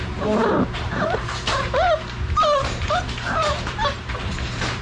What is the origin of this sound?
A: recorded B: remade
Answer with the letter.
B